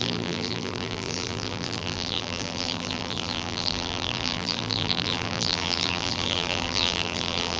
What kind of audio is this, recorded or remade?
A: remade